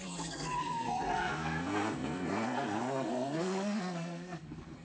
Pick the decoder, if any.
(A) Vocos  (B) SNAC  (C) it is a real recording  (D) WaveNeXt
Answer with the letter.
B